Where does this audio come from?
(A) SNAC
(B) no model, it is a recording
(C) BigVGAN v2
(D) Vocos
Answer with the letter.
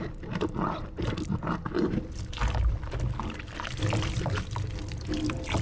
B